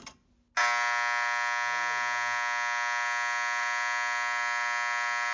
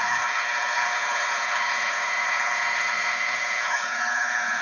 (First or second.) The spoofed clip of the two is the second